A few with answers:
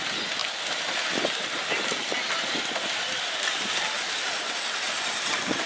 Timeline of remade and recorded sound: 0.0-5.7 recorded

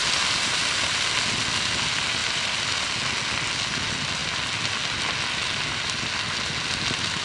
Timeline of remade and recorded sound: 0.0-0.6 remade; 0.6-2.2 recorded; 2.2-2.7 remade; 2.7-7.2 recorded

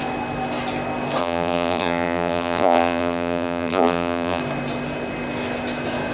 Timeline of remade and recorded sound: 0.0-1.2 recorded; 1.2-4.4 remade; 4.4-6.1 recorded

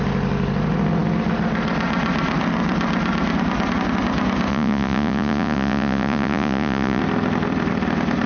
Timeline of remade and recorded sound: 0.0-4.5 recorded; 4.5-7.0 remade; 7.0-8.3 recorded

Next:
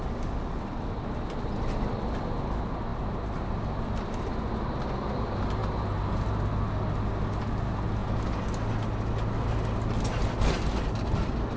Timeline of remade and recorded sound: 0.0-2.9 recorded; 2.9-3.5 remade; 3.5-5.6 recorded; 5.6-6.3 remade; 6.3-11.6 recorded

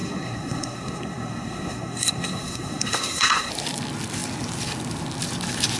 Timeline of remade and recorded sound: 0.0-3.5 remade; 3.5-5.8 recorded